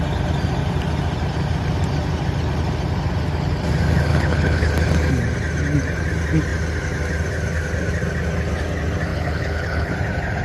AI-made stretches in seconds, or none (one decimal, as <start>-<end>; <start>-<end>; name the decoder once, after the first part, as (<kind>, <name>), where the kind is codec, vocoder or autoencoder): 4.1-4.7 (codec, HILCodec); 9.1-9.9